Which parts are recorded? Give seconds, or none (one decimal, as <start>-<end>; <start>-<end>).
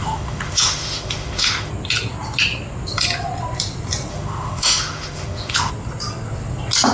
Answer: 1.7-4.1; 5.7-6.9